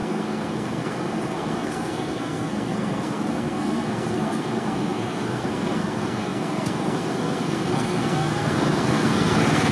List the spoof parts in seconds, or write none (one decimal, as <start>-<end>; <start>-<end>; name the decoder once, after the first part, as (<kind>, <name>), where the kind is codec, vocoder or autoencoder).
0.0-9.7 (codec, SNAC)